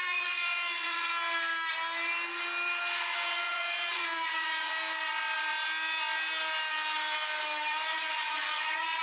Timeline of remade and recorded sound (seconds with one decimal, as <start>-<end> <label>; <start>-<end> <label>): 0.0-1.1 remade; 1.1-3.3 recorded; 3.3-4.7 remade; 4.7-7.9 recorded; 7.9-9.0 remade